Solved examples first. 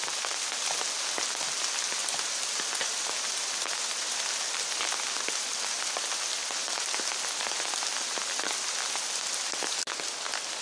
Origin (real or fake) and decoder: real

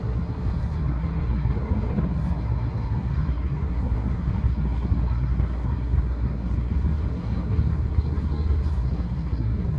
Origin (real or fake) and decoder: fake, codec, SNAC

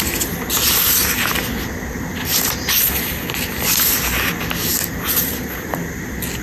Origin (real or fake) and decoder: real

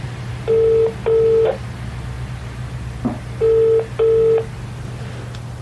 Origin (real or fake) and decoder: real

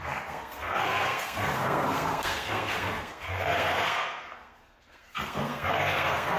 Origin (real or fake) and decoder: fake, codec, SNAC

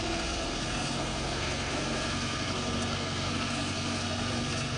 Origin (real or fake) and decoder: fake, codec, SNAC